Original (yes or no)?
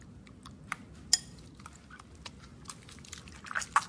yes